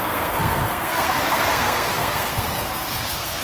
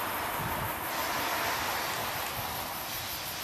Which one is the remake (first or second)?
first